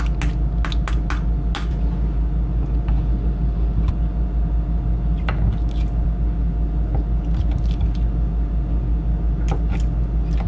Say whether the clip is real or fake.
real